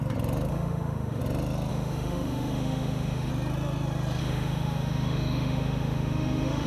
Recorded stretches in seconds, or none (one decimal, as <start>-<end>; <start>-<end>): 0.0-0.5; 1.2-1.7; 3.3-4.2